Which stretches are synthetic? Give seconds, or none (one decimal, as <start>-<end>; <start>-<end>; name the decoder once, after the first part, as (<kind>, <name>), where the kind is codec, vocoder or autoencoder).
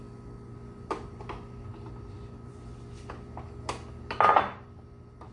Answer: none